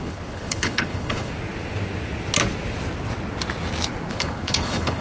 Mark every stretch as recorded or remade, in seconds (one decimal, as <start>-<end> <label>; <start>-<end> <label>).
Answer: 0.0-1.3 remade; 1.3-4.1 recorded; 4.1-5.0 remade